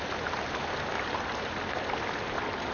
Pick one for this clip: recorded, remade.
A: recorded